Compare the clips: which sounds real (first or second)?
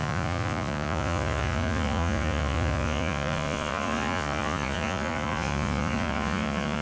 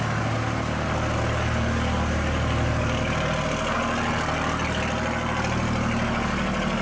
second